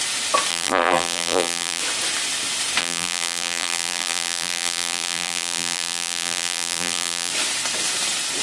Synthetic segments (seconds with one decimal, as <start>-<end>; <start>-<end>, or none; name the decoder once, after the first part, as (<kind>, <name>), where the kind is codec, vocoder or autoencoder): 0.5-1.8 (vocoder, BigVGAN v2); 2.8-7.3